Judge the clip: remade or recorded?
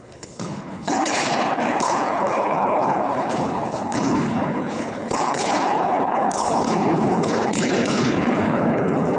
remade